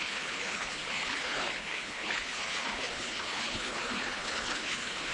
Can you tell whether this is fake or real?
fake